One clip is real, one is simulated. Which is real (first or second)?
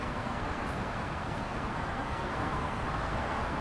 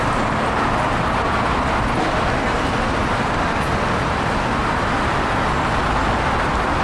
second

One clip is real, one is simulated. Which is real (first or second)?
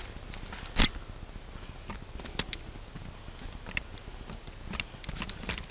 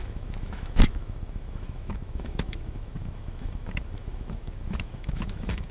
first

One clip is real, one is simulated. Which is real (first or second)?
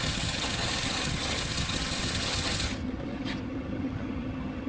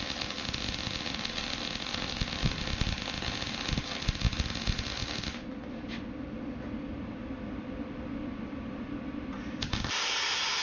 second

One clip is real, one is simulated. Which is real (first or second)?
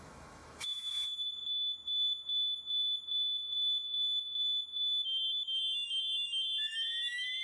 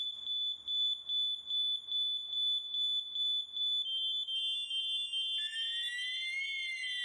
second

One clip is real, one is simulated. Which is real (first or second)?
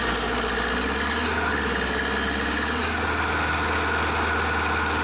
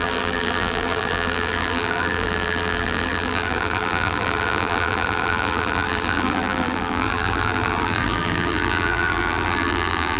first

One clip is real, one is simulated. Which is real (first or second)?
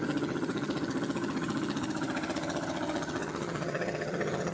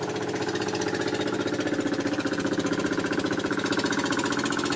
second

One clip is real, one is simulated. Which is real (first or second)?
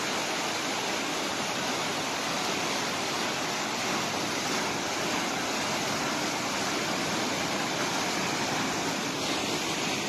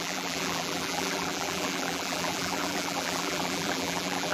first